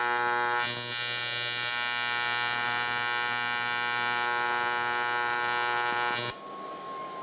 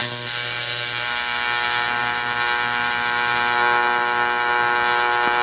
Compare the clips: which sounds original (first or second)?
first